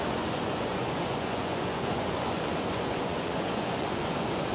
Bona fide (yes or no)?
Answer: no